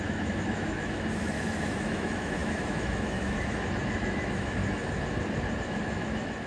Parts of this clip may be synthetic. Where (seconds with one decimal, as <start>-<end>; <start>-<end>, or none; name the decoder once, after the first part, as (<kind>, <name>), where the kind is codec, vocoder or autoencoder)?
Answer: 0.0-4.6 (autoencoder, DAC-VAE); 5.6-6.5